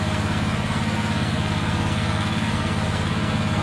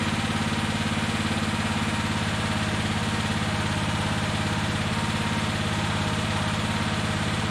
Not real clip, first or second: first